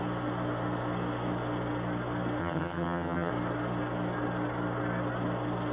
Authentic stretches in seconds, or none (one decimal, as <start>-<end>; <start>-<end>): 0.0-2.4; 3.3-5.7